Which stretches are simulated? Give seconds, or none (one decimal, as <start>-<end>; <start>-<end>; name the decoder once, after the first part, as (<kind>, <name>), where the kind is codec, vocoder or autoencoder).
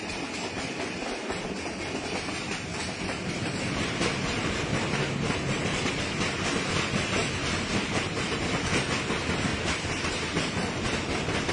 2.7-6.0 (vocoder, BigVGAN v2); 7.2-8.5; 9.5-10.1